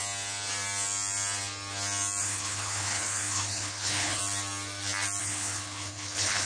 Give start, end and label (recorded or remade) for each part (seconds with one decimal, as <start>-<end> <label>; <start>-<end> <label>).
0.0-2.2 recorded; 2.2-4.2 remade; 4.2-5.2 recorded; 5.2-6.4 remade